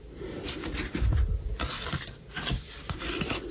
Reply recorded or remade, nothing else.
recorded